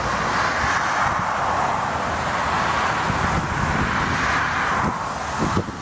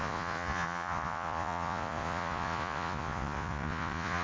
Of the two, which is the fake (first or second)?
second